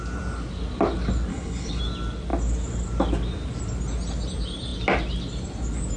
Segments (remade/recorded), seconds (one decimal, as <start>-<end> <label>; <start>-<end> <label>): 0.0-1.3 recorded; 1.3-1.8 remade; 1.8-6.0 recorded